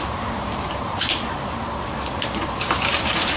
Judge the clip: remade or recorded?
remade